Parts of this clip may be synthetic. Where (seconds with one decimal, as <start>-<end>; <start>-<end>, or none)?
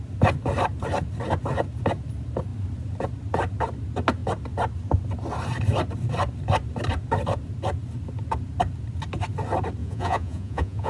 9.8-10.9